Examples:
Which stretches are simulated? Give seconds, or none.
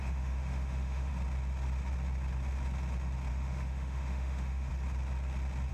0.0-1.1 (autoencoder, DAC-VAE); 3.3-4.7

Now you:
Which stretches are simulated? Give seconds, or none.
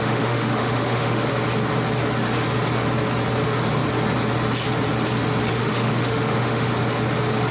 0.0-1.3 (autoencoder, DAC-VAE); 5.5-6.7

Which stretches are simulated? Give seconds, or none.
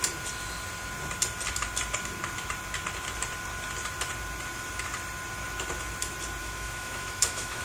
6.4-7.6 (autoencoder, DAC-VAE)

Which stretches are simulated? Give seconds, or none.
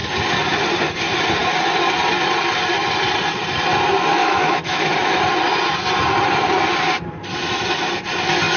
4.2-4.9 (autoencoder, DAC-VAE)